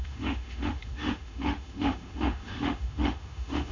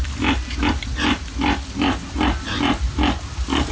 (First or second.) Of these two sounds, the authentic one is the second